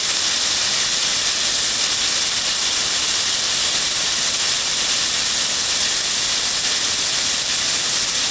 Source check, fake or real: real